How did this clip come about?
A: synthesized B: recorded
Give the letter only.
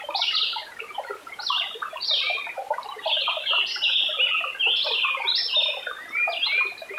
B